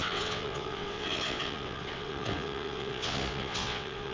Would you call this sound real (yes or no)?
no